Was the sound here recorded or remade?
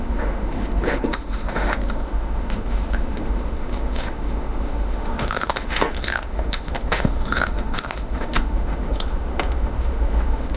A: remade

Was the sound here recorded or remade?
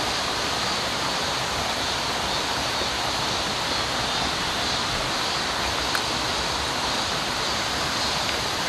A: recorded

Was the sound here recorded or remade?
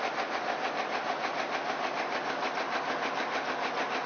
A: recorded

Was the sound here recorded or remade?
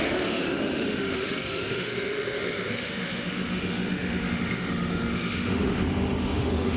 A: remade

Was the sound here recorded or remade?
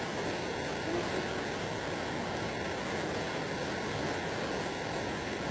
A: recorded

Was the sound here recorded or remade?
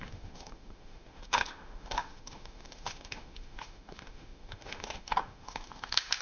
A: remade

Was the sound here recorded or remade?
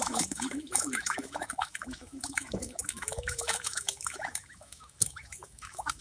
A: remade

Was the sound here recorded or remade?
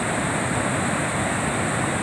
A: recorded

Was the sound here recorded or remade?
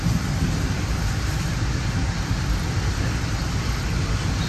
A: recorded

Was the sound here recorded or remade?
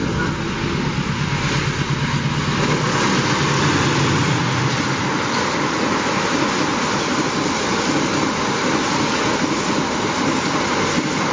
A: recorded